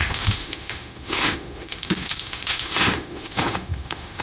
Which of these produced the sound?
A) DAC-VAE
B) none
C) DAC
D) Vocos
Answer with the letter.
A